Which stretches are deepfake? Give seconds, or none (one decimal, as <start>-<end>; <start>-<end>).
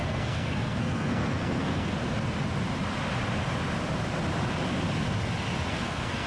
0.0-1.9; 5.7-6.3